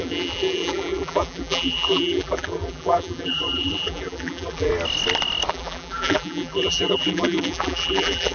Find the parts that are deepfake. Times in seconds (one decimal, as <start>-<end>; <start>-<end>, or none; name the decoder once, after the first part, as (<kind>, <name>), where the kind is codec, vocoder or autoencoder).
0.0-4.7 (vocoder, BigVGAN v2); 5.5-8.3